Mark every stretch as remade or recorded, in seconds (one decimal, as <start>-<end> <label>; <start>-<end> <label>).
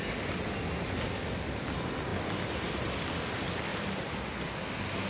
0.0-3.7 recorded; 3.7-4.3 remade; 4.3-5.1 recorded